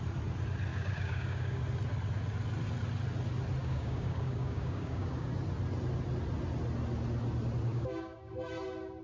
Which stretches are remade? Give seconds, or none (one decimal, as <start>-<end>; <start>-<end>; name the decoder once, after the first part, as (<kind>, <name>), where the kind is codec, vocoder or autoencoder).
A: 0.7-1.6 (codec, DAC); 3.6-5.3; 7.7-8.3